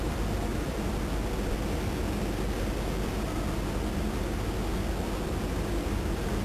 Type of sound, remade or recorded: recorded